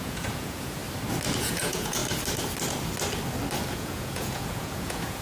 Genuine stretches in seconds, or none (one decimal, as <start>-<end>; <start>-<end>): 0.8-1.4; 2.0-3.7